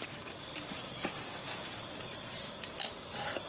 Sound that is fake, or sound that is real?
real